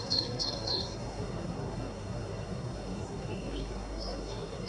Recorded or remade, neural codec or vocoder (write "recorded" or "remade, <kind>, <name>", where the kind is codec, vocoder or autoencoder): remade, codec, SNAC